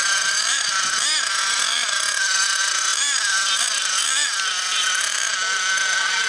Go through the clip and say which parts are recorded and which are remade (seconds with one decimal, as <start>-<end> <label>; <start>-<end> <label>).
0.0-6.3 recorded